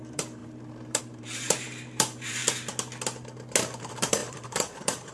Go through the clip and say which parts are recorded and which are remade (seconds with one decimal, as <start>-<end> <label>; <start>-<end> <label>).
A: 0.0-2.4 remade; 2.4-3.8 recorded; 3.8-5.1 remade